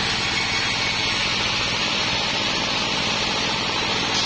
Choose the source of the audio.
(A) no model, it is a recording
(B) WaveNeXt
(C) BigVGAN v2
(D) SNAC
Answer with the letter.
A